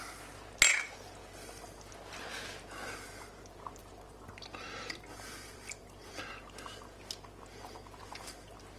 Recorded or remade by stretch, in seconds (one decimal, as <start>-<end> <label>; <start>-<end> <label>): 0.0-1.2 recorded; 1.2-1.9 remade; 1.9-3.8 recorded; 3.8-6.3 remade; 6.3-8.8 recorded